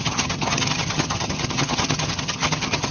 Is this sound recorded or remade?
remade